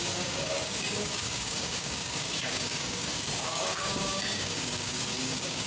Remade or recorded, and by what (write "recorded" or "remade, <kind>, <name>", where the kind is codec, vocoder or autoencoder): remade, codec, DAC